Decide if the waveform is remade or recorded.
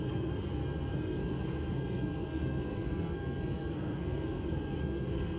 remade